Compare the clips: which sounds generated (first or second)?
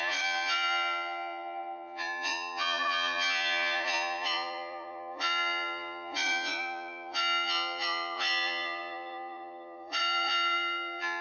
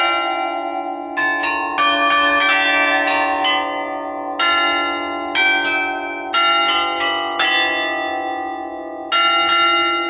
first